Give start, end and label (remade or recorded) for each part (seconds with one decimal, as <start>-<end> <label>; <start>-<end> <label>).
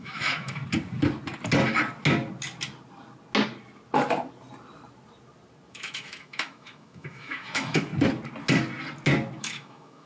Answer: 0.0-0.6 remade; 0.6-5.7 recorded; 5.7-7.9 remade; 7.9-9.4 recorded; 9.4-10.1 remade